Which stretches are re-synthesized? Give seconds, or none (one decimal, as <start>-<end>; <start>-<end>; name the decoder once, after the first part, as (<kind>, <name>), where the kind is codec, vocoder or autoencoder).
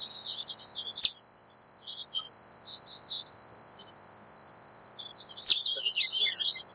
5.5-6.7 (vocoder, BigVGAN v2)